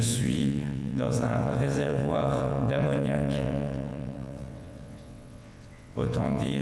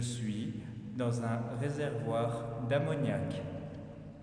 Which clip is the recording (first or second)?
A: second